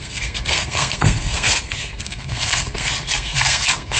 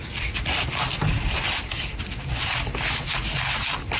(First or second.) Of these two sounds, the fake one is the first